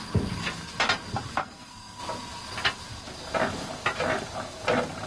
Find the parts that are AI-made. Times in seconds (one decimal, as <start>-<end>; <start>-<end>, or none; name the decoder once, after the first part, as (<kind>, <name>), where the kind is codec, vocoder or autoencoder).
1.4-2.0 (codec, SNAC)